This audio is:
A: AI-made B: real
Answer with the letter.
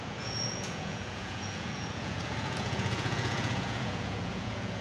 A